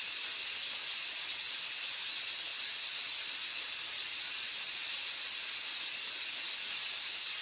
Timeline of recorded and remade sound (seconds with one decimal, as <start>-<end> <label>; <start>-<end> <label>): 0.0-7.4 recorded